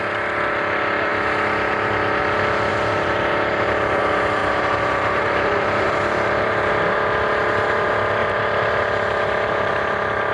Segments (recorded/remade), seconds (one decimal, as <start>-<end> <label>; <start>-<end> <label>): 0.0-2.7 recorded; 2.7-4.0 remade; 4.0-4.4 recorded; 4.4-6.7 remade; 6.7-8.2 recorded; 8.2-9.7 remade; 9.7-10.3 recorded